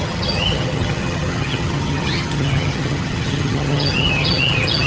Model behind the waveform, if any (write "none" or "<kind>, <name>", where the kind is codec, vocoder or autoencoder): vocoder, HiFi-GAN